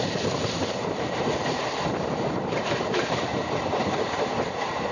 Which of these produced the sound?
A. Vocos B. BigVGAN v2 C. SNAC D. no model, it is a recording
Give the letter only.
B